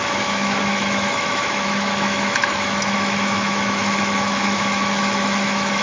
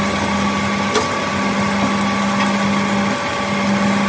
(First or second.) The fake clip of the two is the first